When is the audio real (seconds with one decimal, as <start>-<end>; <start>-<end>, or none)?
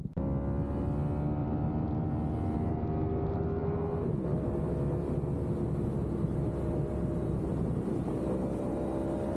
0.0-1.4; 2.1-9.4